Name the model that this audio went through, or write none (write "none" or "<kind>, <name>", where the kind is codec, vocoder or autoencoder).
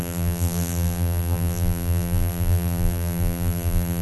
vocoder, BigVGAN v2